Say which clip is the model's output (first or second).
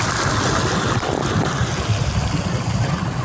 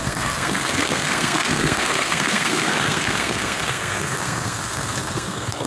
second